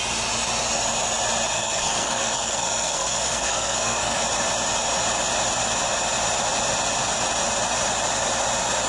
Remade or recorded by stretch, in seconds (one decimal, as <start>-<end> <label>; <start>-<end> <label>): 0.0-1.5 recorded; 1.5-4.2 remade; 4.2-8.9 recorded